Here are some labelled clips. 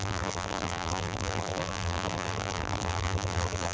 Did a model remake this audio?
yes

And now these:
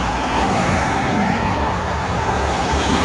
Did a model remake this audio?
yes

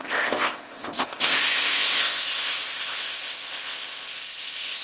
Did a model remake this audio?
yes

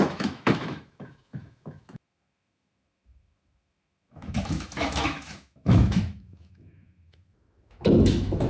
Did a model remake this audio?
yes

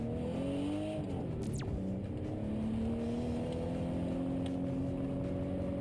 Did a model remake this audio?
no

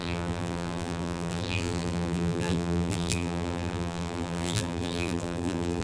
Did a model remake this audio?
yes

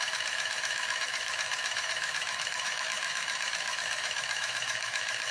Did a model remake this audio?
yes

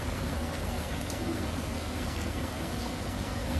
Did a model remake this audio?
yes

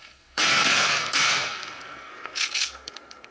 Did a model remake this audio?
yes